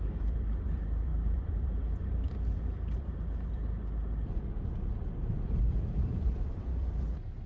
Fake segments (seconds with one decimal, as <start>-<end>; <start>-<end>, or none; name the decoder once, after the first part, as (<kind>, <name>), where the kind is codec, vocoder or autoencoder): 0.0-7.5 (vocoder, BigVGAN v2)